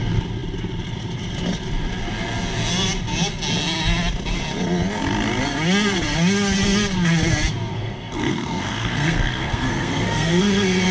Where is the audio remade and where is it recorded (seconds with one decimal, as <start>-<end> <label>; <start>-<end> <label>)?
0.0-7.7 recorded; 7.7-10.9 remade